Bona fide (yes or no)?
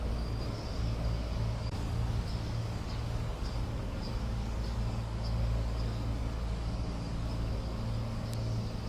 no